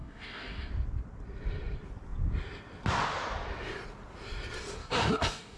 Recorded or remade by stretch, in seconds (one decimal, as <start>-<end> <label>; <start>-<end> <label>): 0.0-0.7 remade; 0.7-4.8 recorded; 4.8-5.6 remade